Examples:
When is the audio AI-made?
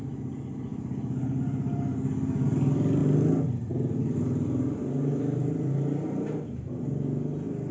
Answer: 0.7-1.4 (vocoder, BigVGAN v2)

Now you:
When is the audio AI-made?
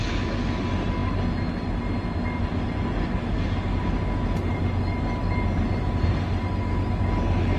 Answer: none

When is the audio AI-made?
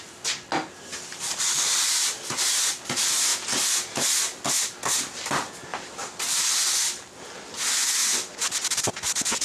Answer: 0.9-1.9 (vocoder, BigVGAN v2); 5.7-6.5; 8.0-8.5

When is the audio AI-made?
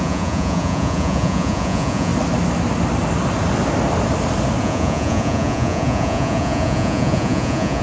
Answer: 0.0-2.1 (vocoder, Vocos); 4.6-7.8